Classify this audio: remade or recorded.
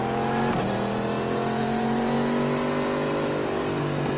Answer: recorded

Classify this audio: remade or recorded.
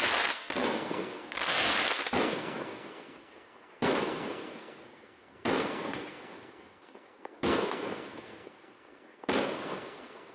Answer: remade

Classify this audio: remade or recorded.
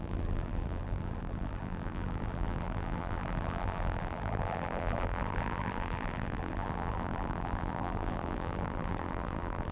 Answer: remade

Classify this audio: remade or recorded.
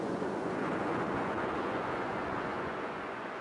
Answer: remade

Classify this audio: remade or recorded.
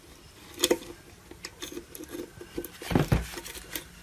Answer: recorded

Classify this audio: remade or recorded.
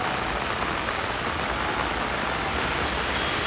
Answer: recorded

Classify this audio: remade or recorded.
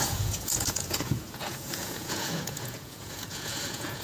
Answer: remade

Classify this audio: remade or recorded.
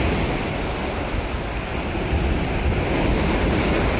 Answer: recorded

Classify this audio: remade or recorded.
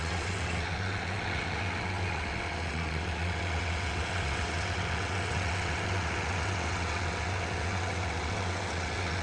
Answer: remade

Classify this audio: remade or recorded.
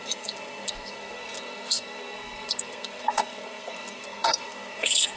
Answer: remade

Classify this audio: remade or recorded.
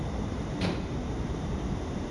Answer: remade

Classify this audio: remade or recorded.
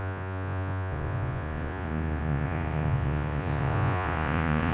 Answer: remade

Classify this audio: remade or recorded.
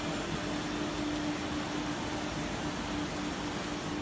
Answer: recorded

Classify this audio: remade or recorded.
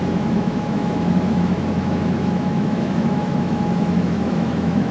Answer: remade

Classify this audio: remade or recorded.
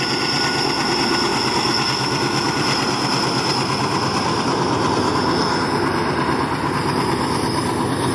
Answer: recorded